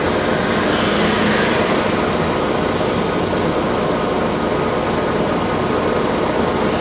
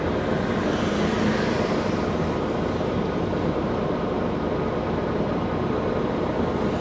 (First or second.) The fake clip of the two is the second